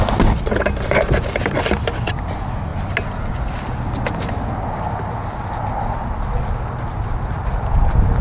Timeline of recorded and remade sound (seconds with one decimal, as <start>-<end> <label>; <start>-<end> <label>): 0.0-8.2 recorded